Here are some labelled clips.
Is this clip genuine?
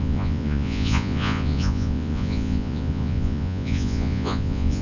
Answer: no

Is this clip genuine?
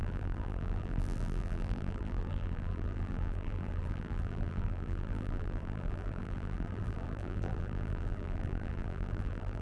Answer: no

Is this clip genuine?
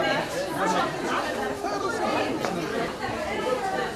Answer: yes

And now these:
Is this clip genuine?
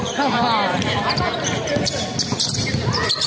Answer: yes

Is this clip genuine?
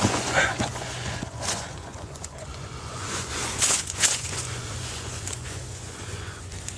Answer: no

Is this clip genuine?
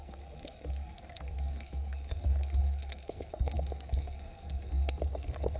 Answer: no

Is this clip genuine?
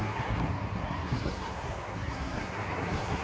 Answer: no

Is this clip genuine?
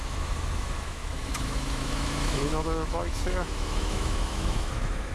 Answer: no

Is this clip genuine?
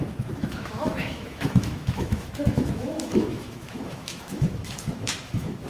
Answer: no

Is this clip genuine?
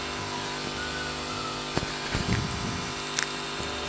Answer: yes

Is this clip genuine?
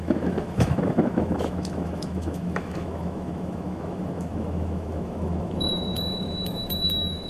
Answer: no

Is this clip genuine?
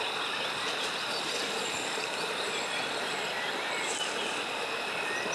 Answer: yes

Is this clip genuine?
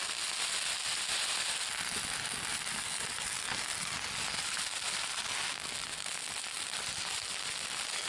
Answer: yes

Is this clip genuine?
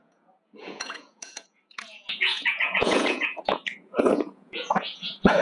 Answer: no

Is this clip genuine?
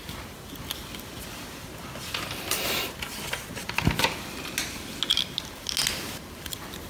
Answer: yes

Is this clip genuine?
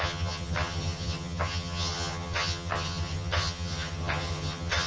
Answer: no